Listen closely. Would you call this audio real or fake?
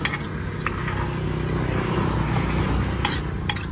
real